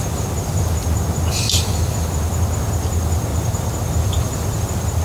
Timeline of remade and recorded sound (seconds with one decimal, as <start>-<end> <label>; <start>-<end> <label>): 0.0-3.3 recorded; 3.3-4.6 remade; 4.6-5.0 recorded